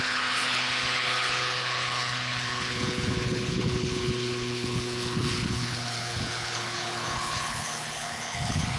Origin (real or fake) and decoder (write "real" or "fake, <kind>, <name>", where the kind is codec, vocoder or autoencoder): fake, codec, HILCodec